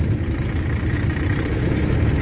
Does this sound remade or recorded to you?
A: remade